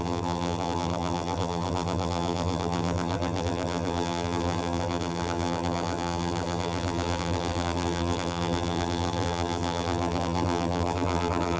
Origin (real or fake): fake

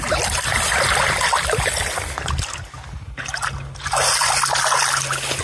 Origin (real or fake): real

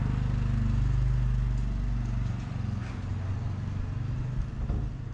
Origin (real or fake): real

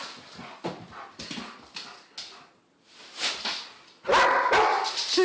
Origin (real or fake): real